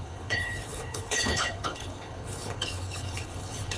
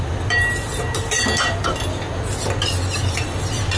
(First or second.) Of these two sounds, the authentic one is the second